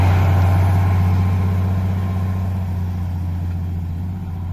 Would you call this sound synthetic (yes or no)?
no